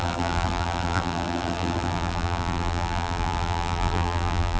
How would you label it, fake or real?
fake